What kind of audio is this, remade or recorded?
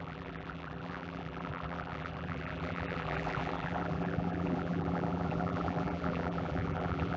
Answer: remade